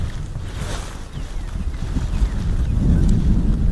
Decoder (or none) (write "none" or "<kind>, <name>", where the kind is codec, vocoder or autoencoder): none